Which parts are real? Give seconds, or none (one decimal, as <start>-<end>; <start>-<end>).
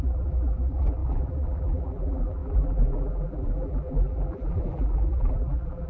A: none